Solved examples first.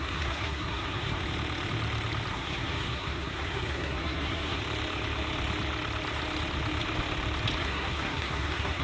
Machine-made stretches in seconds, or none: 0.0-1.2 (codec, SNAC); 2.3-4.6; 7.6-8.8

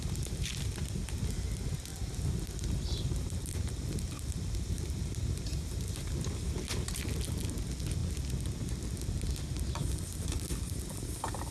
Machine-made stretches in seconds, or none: 1.9-5.9 (vocoder, BigVGAN v2)

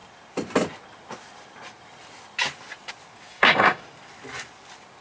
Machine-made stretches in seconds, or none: 3.3-3.8 (codec, DAC)

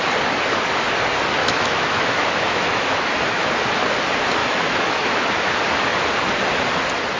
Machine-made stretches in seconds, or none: 1.4-3.5 (autoencoder, DAC-VAE); 4.4-5.5

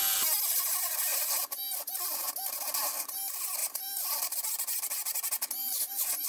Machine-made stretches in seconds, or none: 1.1-2.3 (vocoder, BigVGAN v2); 3.6-4.2

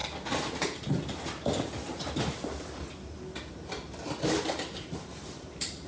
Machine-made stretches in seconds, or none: 3.5-5.9 (vocoder, BigVGAN v2)

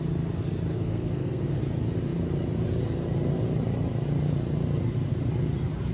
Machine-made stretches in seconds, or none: 0.7-1.6 (codec, SNAC)

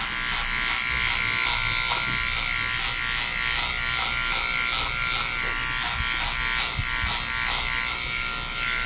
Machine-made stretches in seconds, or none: none